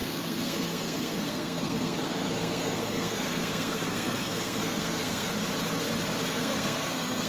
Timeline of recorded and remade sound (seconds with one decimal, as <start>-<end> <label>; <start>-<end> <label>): 0.0-5.3 remade; 5.3-6.3 recorded; 6.3-7.3 remade

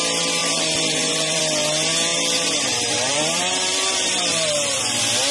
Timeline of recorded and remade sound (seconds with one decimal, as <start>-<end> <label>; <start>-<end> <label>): 0.0-0.4 recorded; 0.4-1.4 remade; 1.4-2.1 recorded; 2.1-4.8 remade; 4.8-5.3 recorded

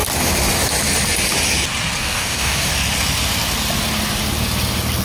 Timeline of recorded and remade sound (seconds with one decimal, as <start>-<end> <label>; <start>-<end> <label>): 0.0-2.0 recorded; 2.0-2.7 remade; 2.7-5.0 recorded

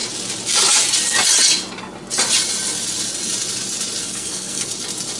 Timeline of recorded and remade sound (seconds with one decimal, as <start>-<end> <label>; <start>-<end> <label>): 0.0-4.0 recorded; 4.0-4.7 remade; 4.7-5.2 recorded

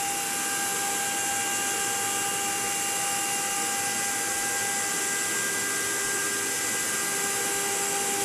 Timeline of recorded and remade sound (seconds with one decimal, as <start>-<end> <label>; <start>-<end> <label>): 0.0-8.2 recorded

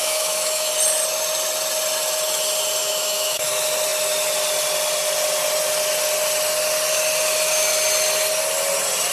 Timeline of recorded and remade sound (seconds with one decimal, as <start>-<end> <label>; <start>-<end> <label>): 0.0-0.7 remade; 0.7-2.8 recorded; 2.8-3.5 remade; 3.5-9.1 recorded

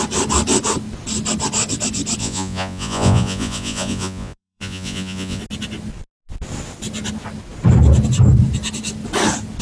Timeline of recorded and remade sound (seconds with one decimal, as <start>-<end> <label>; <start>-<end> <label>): 0.0-2.2 recorded; 2.2-5.4 remade; 5.4-9.6 recorded

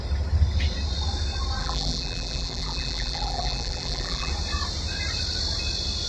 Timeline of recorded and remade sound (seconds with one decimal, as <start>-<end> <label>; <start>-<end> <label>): 0.0-1.6 recorded; 1.6-4.3 remade; 4.3-6.1 recorded